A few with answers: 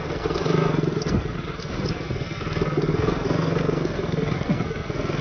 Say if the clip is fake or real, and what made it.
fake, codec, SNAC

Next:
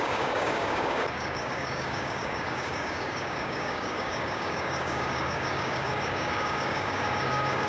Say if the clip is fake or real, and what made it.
fake, codec, DAC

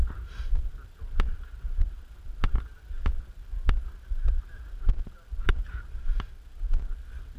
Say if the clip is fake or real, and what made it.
real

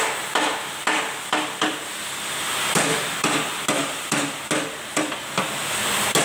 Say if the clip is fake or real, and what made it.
real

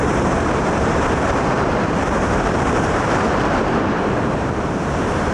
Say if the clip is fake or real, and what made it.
fake, vocoder, BigVGAN v2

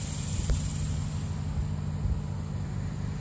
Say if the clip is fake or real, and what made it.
real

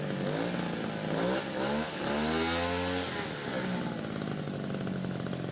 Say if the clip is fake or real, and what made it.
real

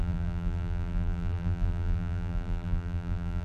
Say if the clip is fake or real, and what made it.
fake, vocoder, BigVGAN v2